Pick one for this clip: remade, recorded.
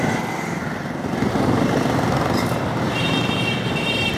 remade